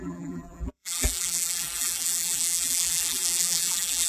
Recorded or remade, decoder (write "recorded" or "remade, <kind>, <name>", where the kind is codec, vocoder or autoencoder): remade, vocoder, BigVGAN v2